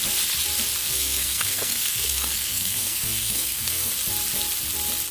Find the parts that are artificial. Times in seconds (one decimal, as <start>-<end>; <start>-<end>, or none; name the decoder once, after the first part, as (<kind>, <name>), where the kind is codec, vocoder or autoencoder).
0.8-3.9 (codec, SNAC)